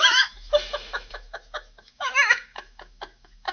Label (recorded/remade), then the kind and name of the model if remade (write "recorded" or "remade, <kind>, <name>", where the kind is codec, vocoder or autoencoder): remade, autoencoder, DAC-VAE